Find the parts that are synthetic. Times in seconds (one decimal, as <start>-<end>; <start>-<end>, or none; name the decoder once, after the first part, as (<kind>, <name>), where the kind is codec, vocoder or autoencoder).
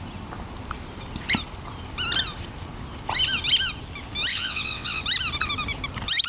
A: 4.3-5.0 (vocoder, WaveNeXt)